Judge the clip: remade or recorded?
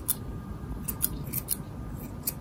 recorded